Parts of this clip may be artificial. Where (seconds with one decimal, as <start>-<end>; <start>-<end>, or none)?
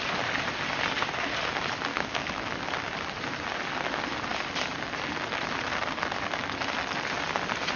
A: 1.9-2.5